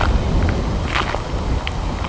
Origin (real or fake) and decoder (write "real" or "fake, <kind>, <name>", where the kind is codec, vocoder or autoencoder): real